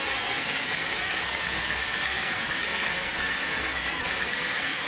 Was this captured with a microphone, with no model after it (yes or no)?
no